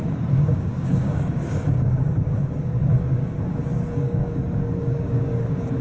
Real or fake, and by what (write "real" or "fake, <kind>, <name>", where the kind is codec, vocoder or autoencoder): fake, codec, DAC